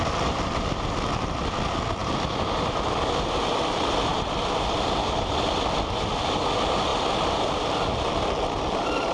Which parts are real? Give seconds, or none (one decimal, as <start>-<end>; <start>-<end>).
0.0-2.0; 3.5-4.1; 5.6-9.1